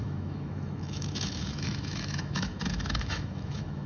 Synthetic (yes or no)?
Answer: yes